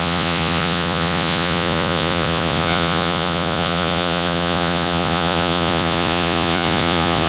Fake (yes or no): yes